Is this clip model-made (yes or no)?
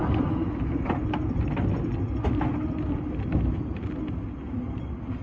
no